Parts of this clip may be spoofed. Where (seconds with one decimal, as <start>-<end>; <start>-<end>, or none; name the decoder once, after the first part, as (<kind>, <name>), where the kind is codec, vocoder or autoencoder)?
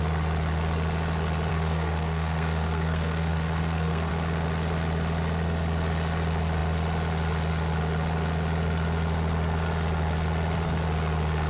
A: 1.5-4.1 (codec, SNAC)